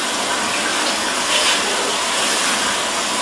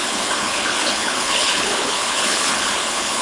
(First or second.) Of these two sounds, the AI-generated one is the second